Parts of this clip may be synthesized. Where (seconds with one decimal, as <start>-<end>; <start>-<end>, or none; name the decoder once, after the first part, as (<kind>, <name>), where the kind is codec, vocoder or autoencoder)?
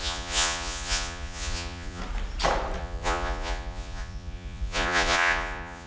0.0-2.0 (vocoder, Vocos); 2.8-5.9